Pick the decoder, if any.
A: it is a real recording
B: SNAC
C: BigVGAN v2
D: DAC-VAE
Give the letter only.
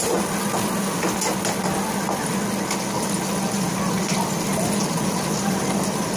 A